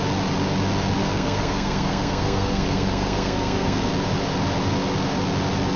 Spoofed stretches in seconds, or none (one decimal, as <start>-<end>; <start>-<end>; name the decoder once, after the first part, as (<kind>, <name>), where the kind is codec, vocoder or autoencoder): 1.0-3.9 (codec, SNAC)